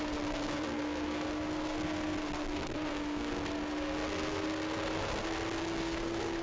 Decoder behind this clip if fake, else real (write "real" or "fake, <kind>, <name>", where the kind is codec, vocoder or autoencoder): fake, codec, SNAC